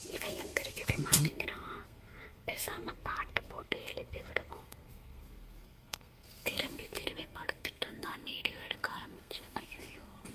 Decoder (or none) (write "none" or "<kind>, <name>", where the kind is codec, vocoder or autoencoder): codec, SNAC